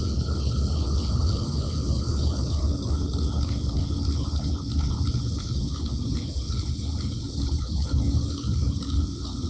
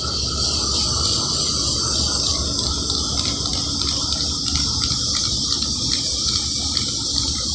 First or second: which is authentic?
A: second